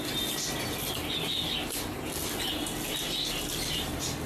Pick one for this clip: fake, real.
real